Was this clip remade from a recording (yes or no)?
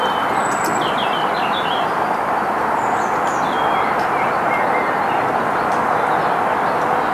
no